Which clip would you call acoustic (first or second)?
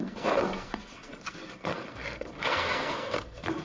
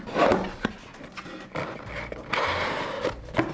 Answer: second